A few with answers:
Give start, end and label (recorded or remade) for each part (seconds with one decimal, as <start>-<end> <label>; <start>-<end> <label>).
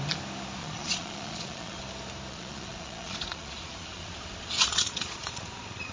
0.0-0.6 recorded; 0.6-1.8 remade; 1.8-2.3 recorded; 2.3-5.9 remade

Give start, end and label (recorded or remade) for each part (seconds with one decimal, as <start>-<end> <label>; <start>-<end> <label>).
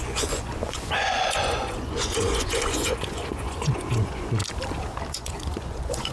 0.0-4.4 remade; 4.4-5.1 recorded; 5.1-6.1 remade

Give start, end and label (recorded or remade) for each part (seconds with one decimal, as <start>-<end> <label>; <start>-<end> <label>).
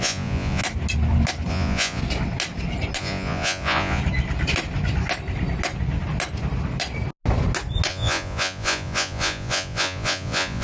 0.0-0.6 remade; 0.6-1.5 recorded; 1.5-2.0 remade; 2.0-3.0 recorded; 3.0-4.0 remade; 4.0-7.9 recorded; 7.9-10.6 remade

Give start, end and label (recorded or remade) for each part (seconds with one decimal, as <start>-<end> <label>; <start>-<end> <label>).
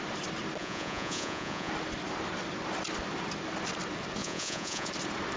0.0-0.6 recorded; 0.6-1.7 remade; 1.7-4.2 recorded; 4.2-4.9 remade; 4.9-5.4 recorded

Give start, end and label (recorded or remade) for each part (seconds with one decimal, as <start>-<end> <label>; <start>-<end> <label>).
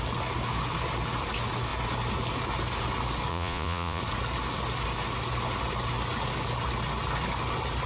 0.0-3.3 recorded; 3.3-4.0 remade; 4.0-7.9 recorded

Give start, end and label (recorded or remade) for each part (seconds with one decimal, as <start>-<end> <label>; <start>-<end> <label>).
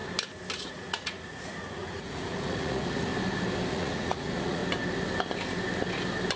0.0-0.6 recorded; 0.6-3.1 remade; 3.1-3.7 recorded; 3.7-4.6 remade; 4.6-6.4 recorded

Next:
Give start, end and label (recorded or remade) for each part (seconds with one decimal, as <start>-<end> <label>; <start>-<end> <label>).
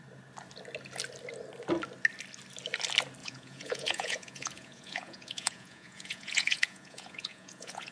0.0-3.2 recorded; 3.2-7.9 remade